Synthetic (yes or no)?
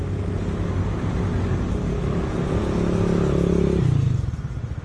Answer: no